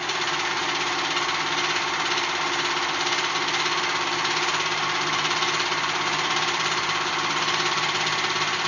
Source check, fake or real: real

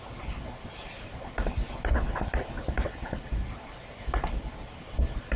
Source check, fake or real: fake